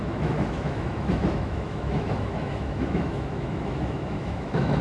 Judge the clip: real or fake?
fake